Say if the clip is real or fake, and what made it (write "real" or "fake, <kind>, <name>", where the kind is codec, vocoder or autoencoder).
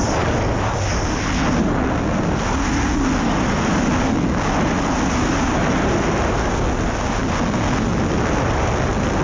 real